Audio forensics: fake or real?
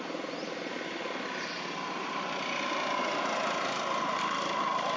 real